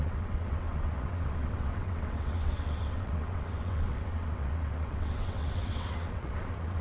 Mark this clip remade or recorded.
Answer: remade